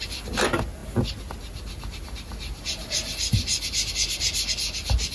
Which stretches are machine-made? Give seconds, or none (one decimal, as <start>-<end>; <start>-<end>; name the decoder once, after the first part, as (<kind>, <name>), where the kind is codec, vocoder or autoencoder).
none